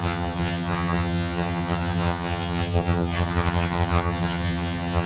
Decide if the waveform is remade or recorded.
remade